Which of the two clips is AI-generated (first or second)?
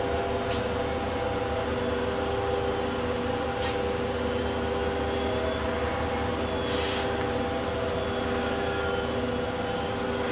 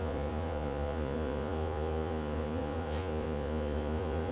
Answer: second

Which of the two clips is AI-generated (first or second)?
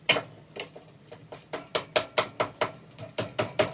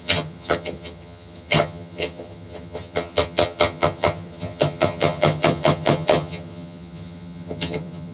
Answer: second